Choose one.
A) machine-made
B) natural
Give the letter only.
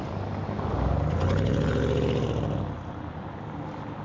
B